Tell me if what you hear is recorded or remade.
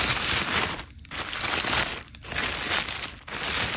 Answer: recorded